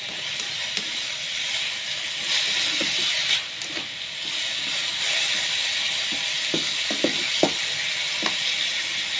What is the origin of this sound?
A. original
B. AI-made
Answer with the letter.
A